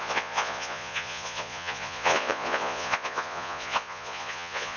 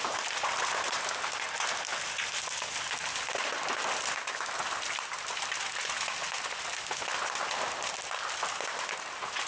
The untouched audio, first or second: second